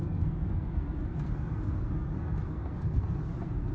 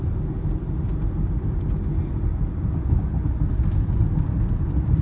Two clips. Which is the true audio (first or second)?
second